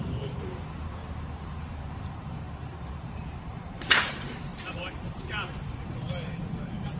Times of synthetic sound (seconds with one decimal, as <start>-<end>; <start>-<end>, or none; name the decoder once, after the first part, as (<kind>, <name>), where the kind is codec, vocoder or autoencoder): 0.0-7.0 (vocoder, BigVGAN v2)

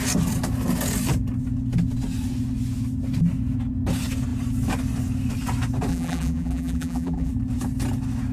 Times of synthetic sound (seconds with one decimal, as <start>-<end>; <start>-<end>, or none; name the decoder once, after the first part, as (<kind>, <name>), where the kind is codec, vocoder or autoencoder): 5.9-7.3 (vocoder, BigVGAN v2)

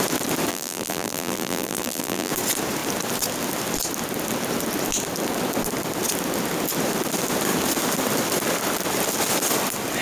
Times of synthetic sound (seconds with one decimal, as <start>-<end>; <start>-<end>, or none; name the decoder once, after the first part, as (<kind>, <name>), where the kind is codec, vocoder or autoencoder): 0.5-2.3 (vocoder, BigVGAN v2)

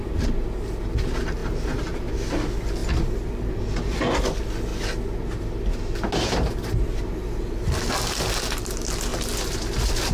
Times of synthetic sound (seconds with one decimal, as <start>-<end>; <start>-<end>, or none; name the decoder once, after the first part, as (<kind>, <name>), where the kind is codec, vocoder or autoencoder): none

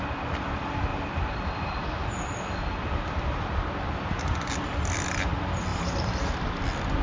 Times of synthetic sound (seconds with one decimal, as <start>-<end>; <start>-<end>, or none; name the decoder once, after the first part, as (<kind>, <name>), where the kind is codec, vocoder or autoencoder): 0.9-1.8 (vocoder, BigVGAN v2); 5.7-6.3

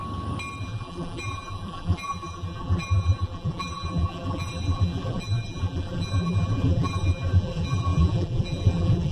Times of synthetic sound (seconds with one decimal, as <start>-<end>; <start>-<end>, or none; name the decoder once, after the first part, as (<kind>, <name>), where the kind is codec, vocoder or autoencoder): 0.6-9.1 (vocoder, BigVGAN v2)